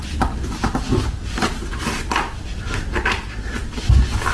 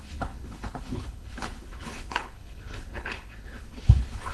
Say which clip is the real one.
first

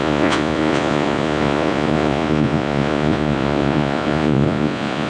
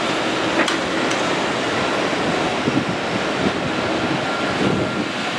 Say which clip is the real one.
second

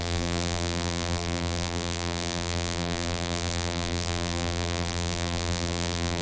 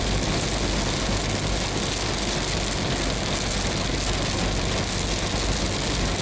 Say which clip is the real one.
second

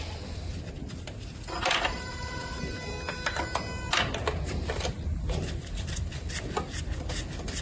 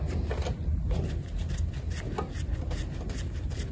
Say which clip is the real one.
second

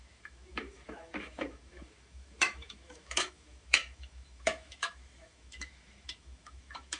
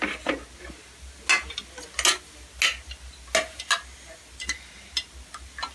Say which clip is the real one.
second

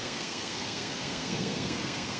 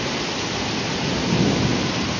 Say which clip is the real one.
second